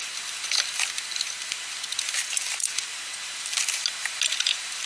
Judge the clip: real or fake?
real